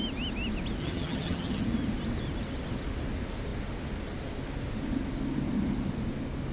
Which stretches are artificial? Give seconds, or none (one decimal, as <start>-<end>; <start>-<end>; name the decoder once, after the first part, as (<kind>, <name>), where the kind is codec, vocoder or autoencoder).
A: 0.8-1.6 (vocoder, HiFi-GAN)